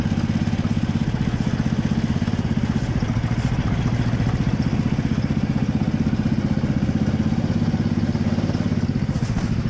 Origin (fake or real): real